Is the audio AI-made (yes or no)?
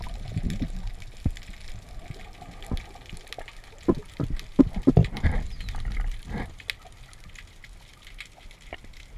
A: no